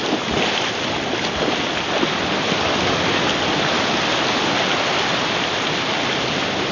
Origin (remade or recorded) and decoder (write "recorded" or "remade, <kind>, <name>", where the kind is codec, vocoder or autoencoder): recorded